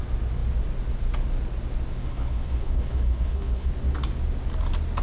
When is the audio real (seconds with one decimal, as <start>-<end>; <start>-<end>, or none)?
0.0-2.0; 3.7-5.0